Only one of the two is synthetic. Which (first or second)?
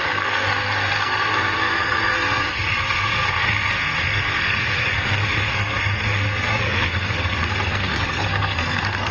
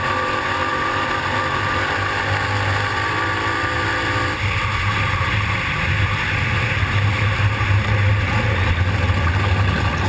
first